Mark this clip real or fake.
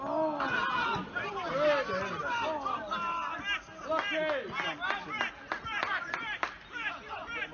real